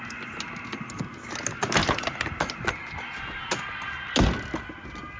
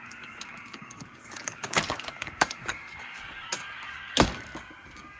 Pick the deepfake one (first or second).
second